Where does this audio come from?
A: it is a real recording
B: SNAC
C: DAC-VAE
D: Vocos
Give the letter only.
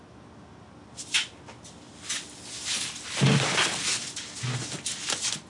A